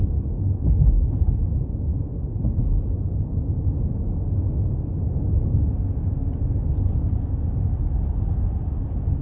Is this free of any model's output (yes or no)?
yes